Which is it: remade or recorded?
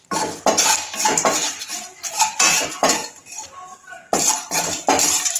recorded